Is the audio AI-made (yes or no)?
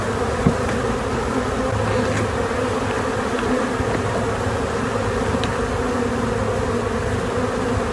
no